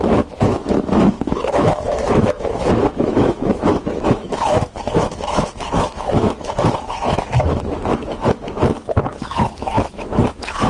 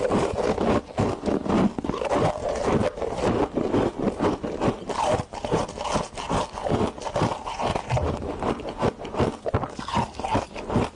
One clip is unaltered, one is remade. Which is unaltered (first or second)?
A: second